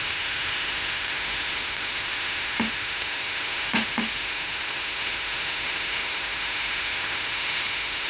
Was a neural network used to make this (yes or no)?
yes